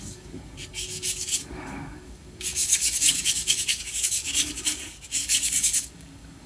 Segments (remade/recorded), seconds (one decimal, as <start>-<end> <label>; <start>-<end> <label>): 0.0-6.5 remade